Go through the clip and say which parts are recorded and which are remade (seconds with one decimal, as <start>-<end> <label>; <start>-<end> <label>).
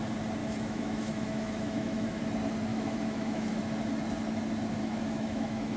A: 0.0-0.4 recorded; 0.4-2.2 remade; 2.2-2.7 recorded; 2.7-3.6 remade; 3.6-4.8 recorded; 4.8-5.8 remade